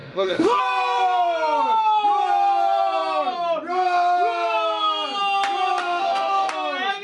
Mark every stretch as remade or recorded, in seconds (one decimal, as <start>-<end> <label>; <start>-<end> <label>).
0.0-0.6 remade; 0.6-5.8 recorded; 5.8-6.5 remade; 6.5-7.0 recorded